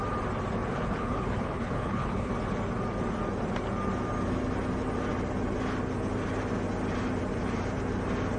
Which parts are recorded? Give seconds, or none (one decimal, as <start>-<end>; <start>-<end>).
0.0-0.7; 2.3-8.4